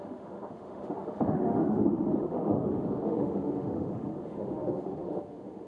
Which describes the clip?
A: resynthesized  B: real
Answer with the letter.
A